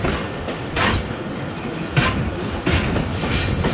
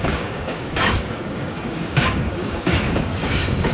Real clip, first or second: first